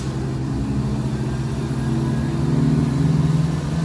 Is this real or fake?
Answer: real